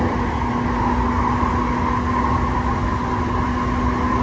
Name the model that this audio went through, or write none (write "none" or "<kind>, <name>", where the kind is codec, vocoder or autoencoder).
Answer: none